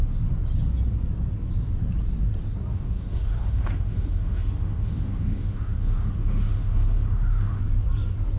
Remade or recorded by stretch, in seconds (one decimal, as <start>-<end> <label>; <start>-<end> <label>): 0.0-2.7 recorded; 2.7-7.6 remade; 7.6-8.4 recorded